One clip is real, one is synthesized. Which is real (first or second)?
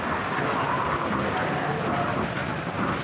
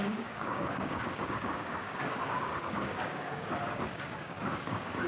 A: first